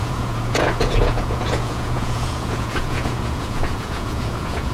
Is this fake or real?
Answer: fake